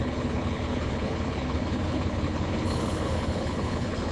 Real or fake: fake